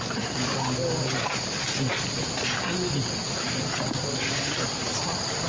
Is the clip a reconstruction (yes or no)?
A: no